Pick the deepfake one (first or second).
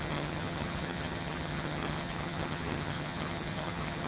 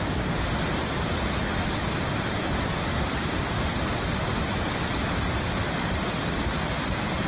first